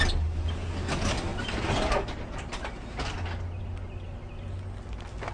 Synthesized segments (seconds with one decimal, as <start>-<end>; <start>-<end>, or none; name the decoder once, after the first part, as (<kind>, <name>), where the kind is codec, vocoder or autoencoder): none